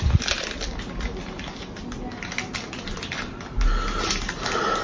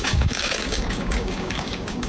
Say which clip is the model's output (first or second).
second